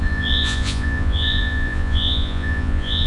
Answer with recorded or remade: remade